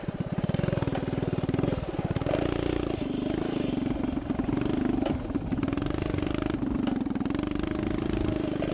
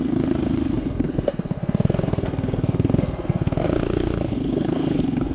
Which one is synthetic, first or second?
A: second